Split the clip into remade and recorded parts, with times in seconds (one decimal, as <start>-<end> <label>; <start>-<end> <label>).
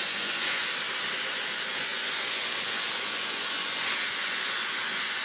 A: 0.0-0.6 remade; 0.6-1.2 recorded; 1.2-5.2 remade